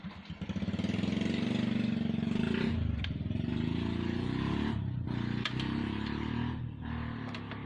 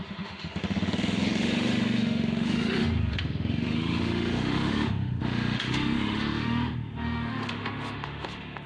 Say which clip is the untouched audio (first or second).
first